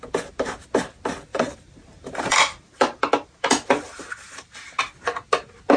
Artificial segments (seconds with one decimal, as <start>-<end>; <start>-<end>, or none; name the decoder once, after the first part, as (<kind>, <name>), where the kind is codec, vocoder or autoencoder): 1.3-4.8 (vocoder, BigVGAN v2)